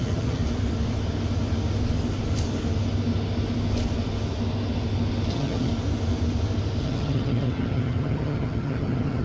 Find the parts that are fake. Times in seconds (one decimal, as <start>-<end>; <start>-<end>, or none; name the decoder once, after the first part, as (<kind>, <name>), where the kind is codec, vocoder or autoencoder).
0.0-0.4 (vocoder, HiFi-GAN); 5.3-5.7; 6.8-9.2